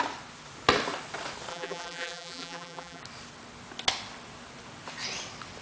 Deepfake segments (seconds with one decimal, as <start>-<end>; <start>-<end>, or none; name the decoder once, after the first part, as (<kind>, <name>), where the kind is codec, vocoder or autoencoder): 1.5-3.0 (vocoder, BigVGAN v2)